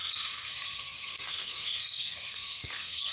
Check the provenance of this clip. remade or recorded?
remade